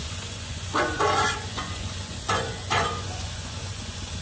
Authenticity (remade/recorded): remade